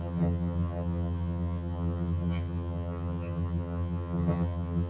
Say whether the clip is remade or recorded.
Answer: remade